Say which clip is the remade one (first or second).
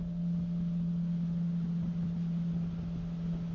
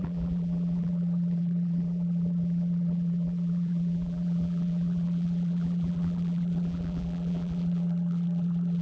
second